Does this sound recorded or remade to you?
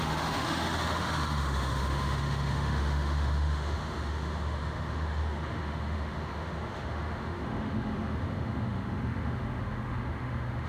remade